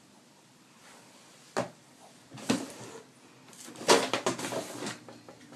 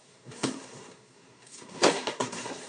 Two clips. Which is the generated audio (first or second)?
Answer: second